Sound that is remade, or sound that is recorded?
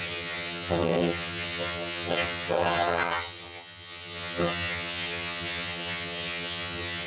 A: remade